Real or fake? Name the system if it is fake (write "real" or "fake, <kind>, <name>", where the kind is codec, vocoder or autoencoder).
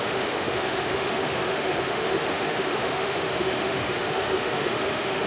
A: fake, autoencoder, DAC-VAE